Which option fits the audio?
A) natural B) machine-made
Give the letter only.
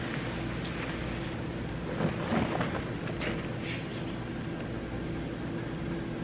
A